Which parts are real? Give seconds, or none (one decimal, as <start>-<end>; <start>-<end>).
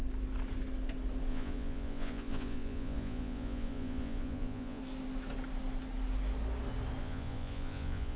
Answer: 0.0-1.3; 4.8-7.0